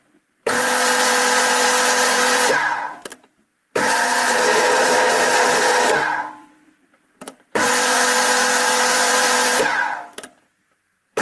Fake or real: fake